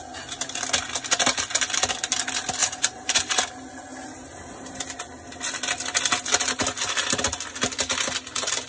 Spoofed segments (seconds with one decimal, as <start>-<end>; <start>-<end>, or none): 2.6-3.4; 3.9-4.8; 6.8-7.3